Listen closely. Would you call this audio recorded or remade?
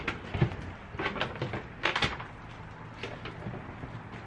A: recorded